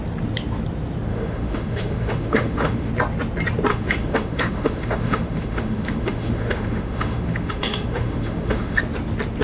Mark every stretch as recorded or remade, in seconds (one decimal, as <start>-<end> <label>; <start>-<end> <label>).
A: 0.0-1.1 recorded; 1.1-2.9 remade; 2.9-3.7 recorded; 3.7-8.8 remade; 8.8-9.4 recorded